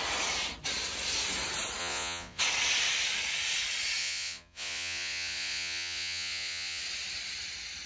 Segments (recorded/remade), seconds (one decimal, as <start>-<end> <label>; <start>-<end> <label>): 0.0-1.8 recorded; 1.8-2.4 remade; 2.4-4.0 recorded; 4.0-6.8 remade; 6.8-7.9 recorded